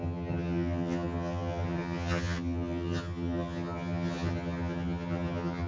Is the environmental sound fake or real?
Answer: fake